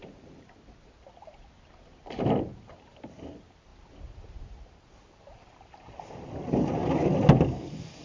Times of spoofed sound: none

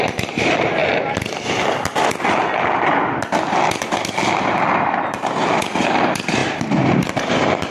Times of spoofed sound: 0.0-0.8 (vocoder, BigVGAN v2); 5.0-7.7

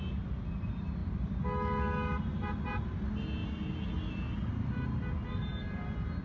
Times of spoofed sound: none

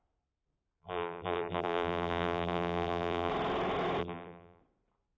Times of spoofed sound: 0.8-3.3 (vocoder, BigVGAN v2); 4.0-4.6